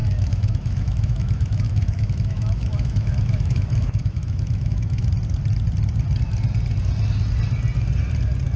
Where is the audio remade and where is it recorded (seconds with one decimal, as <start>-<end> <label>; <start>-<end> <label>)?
0.0-5.1 remade; 5.1-8.6 recorded